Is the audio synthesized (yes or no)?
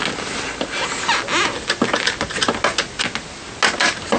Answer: no